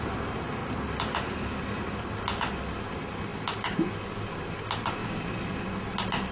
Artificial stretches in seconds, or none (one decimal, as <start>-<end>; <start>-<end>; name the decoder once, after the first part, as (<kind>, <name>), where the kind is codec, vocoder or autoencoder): 0.6-1.6 (vocoder, BigVGAN v2); 5.0-5.6